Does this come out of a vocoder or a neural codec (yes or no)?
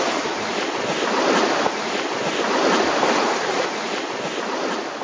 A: no